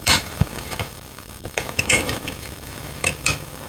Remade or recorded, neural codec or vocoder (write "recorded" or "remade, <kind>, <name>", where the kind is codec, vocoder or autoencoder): remade, autoencoder, DAC-VAE